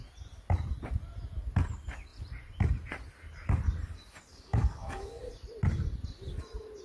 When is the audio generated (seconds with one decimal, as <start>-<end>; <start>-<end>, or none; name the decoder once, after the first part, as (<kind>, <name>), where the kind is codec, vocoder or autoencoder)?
4.3-5.2 (codec, DAC)